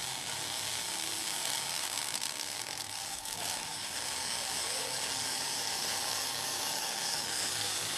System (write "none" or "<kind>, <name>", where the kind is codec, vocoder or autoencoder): codec, DAC